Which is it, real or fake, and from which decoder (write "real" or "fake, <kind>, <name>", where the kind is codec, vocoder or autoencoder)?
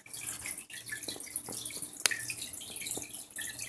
real